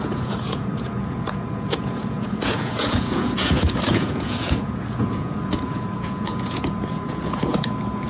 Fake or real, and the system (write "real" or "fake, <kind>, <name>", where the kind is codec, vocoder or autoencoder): fake, vocoder, Vocos